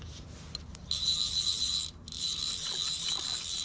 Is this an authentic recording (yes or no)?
no